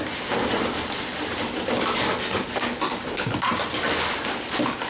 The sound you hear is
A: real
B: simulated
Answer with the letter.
A